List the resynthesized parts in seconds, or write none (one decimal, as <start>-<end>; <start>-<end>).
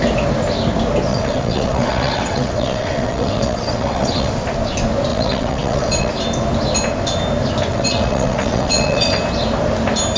1.1-4.3; 5.1-6.1; 7.7-9.2